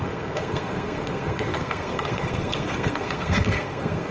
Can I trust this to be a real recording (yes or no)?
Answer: no